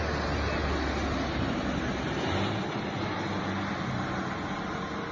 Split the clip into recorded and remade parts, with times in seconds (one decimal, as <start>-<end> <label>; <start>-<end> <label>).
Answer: 0.0-5.1 recorded